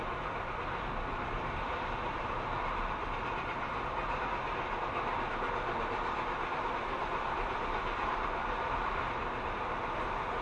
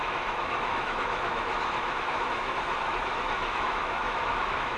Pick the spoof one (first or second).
second